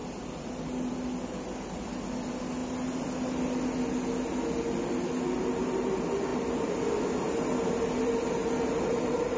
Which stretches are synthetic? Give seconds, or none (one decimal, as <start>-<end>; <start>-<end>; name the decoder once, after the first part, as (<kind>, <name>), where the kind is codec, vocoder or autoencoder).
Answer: none